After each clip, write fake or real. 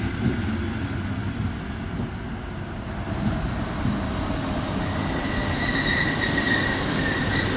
real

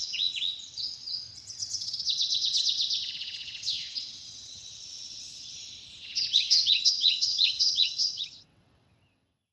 fake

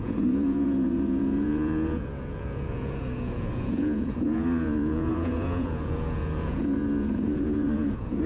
fake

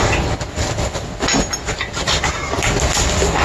real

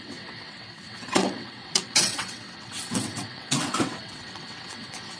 fake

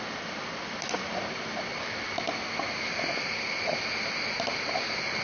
real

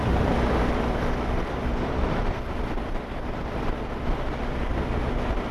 fake